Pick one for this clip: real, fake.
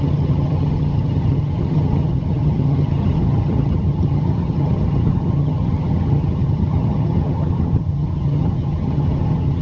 fake